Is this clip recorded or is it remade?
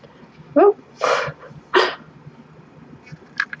recorded